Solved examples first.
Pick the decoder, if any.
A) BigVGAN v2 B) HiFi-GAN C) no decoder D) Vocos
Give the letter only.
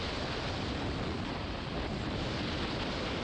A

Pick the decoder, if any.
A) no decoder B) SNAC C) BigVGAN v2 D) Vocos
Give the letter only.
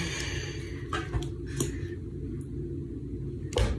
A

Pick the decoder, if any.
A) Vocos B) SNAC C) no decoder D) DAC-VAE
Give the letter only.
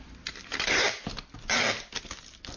C